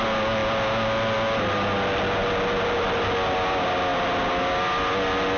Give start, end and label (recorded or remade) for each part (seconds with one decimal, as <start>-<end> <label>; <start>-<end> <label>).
0.0-5.4 recorded